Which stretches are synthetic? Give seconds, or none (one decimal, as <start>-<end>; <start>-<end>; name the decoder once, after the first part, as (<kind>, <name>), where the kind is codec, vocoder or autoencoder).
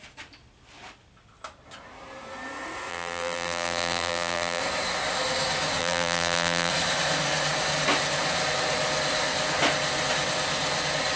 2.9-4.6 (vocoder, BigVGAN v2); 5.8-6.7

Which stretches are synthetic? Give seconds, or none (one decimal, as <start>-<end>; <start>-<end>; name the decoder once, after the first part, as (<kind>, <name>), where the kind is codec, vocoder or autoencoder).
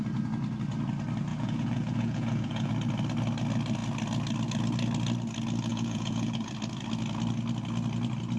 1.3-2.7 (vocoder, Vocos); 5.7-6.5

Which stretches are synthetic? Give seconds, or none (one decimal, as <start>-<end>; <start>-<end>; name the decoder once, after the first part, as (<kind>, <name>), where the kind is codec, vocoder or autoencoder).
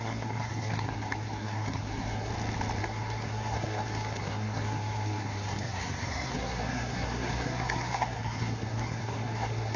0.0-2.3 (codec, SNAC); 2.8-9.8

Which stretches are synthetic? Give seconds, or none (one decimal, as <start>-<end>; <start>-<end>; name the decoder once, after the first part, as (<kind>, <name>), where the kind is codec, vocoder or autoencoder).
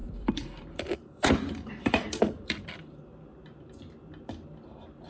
0.0-3.0 (vocoder, BigVGAN v2)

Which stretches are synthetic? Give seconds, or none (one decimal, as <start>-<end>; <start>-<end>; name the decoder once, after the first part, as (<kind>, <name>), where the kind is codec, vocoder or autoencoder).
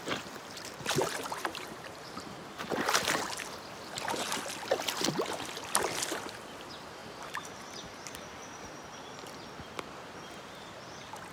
1.0-3.2 (vocoder, BigVGAN v2); 7.0-9.2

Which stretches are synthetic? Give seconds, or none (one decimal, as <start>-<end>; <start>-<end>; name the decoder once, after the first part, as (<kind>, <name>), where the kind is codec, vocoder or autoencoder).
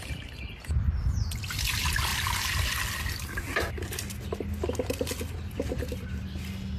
2.1-4.2 (vocoder, BigVGAN v2)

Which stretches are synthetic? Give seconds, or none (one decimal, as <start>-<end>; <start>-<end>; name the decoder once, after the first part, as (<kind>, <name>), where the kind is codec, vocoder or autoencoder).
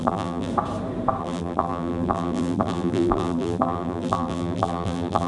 0.0-0.5 (vocoder, BigVGAN v2); 1.2-5.3